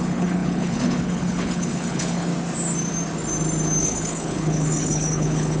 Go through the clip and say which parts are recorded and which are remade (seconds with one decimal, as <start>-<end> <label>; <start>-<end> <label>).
0.0-2.3 remade; 2.3-3.8 recorded; 3.8-5.6 remade